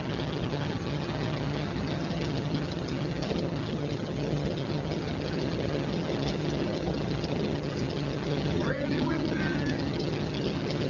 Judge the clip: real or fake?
fake